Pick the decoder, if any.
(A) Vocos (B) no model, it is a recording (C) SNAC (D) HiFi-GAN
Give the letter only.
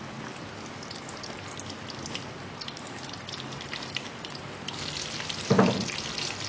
B